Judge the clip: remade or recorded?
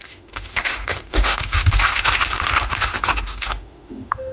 remade